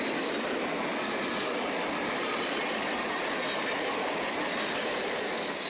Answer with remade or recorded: recorded